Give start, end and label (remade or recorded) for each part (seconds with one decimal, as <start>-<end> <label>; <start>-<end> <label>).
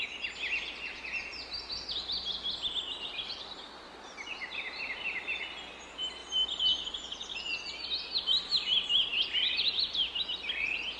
0.0-9.1 recorded; 9.1-10.1 remade; 10.1-11.0 recorded